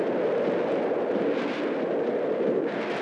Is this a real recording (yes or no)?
yes